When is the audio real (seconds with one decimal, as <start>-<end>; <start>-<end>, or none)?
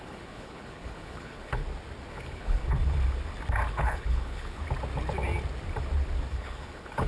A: 1.6-2.1; 2.6-3.7; 4.6-6.3